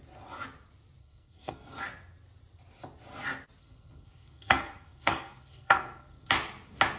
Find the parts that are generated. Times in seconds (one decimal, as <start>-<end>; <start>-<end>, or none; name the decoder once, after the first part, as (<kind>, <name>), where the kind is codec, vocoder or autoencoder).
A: 1.0-1.8 (codec, SNAC); 3.6-6.3